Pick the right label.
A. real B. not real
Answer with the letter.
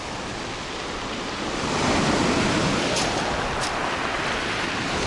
A